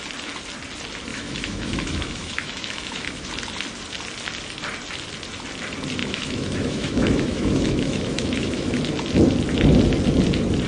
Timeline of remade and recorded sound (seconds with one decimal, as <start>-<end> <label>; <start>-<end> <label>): 0.0-1.1 recorded; 1.1-3.3 remade; 3.3-6.0 recorded; 6.0-8.8 remade; 8.8-10.7 recorded

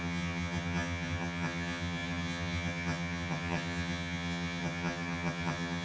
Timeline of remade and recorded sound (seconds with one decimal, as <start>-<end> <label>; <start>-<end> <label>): 0.0-5.8 remade

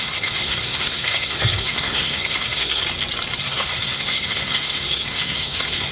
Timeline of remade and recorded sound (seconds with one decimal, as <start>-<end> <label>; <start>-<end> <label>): 0.0-2.8 remade; 2.8-3.4 recorded; 3.4-5.9 remade

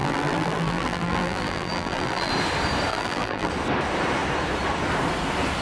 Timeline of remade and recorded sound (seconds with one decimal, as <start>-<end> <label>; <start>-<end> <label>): 0.0-2.3 remade; 2.3-2.9 recorded; 2.9-3.5 remade; 3.5-5.6 recorded

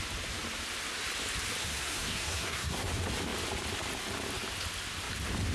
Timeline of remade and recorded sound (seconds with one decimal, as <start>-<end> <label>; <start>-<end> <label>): 0.0-1.6 recorded; 1.6-2.9 remade; 2.9-5.5 recorded